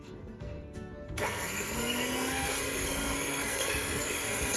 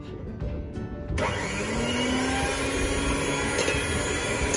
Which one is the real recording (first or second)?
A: second